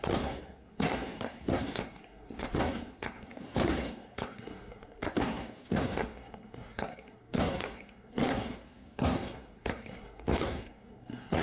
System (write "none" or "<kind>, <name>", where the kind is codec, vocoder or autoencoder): codec, SNAC